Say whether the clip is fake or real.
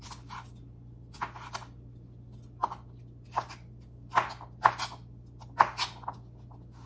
real